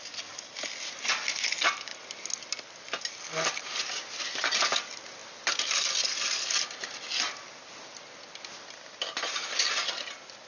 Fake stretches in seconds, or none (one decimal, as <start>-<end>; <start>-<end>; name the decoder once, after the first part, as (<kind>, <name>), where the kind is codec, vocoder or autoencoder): none